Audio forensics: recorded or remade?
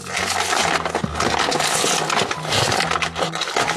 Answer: recorded